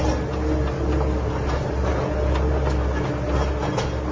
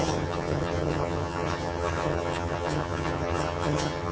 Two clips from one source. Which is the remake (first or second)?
second